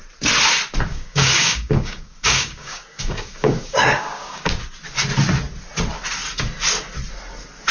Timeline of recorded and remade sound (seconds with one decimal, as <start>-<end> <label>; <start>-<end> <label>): 0.0-0.9 recorded; 0.9-4.5 remade; 4.5-7.7 recorded